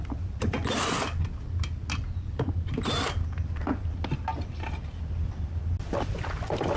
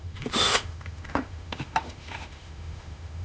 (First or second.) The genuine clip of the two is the first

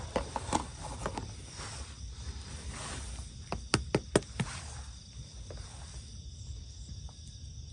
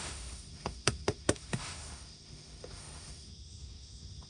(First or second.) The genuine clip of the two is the first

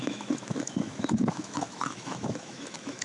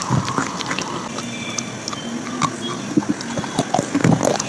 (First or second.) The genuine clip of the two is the second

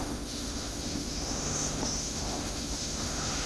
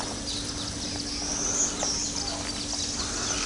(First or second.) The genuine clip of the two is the second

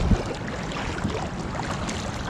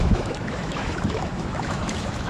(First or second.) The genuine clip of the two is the first